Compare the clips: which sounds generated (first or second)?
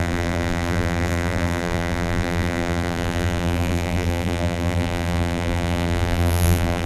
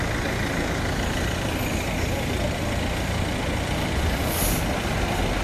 first